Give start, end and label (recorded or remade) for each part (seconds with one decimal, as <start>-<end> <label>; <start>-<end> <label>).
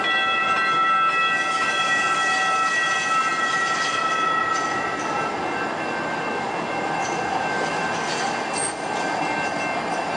0.0-10.2 recorded